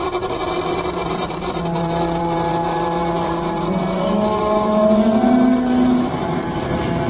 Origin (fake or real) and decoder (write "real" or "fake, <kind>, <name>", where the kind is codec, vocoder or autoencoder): fake, vocoder, BigVGAN v2